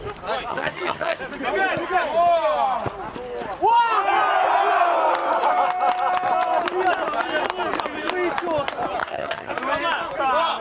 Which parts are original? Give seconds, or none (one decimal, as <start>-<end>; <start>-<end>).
0.0-0.5; 1.2-9.0; 9.5-10.6